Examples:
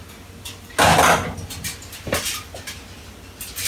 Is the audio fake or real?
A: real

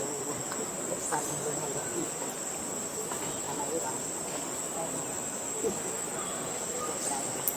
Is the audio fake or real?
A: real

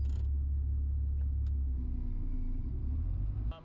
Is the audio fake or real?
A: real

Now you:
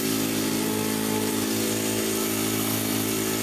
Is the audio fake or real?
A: real